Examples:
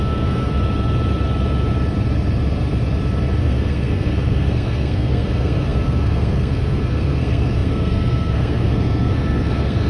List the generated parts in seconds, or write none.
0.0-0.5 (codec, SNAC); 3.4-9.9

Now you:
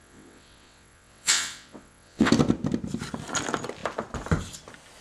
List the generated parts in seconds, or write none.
0.0-2.3 (vocoder, WaveNeXt)